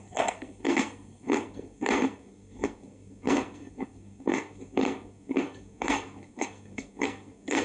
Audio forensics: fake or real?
fake